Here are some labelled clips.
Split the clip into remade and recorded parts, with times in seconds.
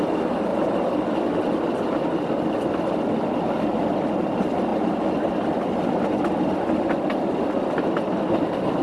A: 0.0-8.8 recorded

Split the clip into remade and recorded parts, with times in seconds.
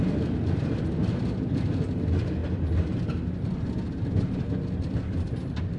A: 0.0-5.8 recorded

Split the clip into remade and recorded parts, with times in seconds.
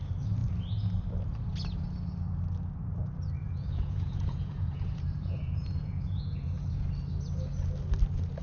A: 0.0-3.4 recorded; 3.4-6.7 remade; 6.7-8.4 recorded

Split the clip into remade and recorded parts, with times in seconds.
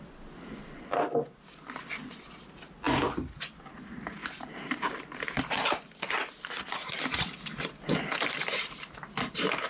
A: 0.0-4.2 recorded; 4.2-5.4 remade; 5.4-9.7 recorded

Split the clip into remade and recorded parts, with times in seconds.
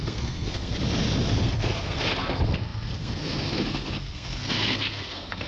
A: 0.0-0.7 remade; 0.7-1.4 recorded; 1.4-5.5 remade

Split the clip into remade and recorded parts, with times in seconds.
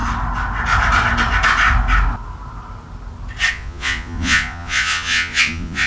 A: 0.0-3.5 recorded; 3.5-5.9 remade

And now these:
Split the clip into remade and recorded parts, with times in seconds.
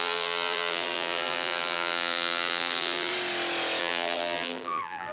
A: 0.0-3.1 remade; 3.1-3.8 recorded; 3.8-5.1 remade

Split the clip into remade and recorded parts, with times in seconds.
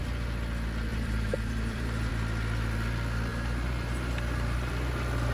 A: 0.0-0.9 recorded; 0.9-2.1 remade; 2.1-3.3 recorded; 3.3-4.7 remade; 4.7-5.3 recorded